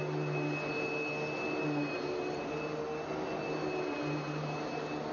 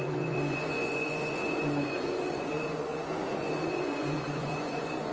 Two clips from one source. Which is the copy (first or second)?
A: second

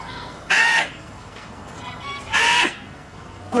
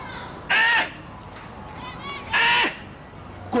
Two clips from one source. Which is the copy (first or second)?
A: first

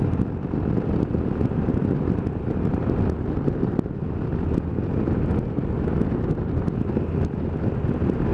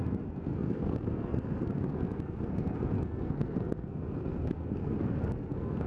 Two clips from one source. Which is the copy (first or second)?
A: second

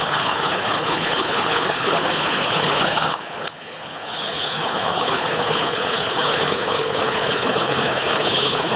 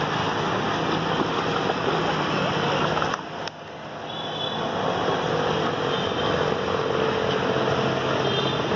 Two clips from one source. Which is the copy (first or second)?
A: first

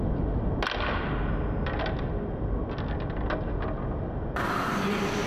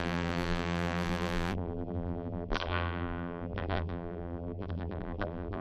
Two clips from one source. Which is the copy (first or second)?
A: second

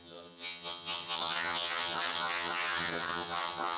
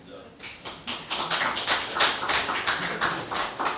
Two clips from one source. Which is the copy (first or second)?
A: first